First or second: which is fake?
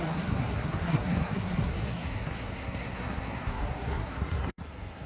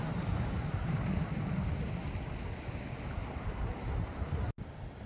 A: first